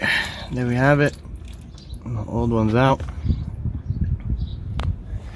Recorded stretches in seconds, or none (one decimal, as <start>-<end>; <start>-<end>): 0.0-4.5